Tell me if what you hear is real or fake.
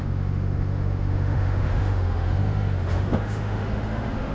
fake